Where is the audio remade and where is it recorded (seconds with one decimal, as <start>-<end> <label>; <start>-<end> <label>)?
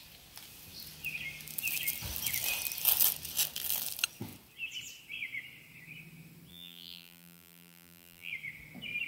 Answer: 0.0-6.5 recorded; 6.5-8.3 remade; 8.3-9.1 recorded